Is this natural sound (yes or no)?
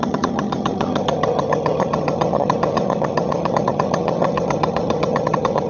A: no